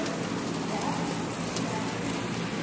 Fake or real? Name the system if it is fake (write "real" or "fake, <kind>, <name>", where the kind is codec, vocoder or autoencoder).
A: real